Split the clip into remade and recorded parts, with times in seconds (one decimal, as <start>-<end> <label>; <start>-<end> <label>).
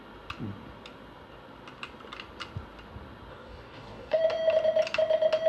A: 0.0-3.3 recorded; 3.3-4.2 remade; 4.2-5.5 recorded